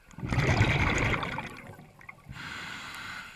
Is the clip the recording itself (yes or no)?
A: no